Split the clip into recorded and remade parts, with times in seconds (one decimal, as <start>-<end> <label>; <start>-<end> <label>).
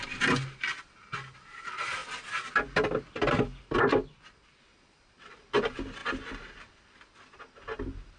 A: 0.0-8.2 recorded